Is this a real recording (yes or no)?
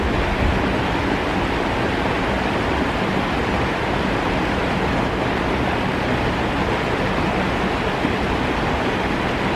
yes